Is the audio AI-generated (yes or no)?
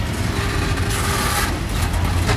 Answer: no